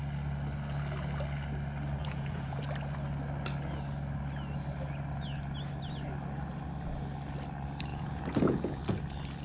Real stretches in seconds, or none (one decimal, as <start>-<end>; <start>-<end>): 0.0-2.0; 2.6-7.9; 8.8-9.4